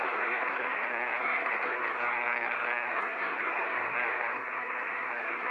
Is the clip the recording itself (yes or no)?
no